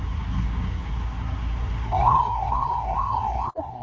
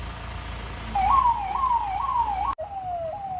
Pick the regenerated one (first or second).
first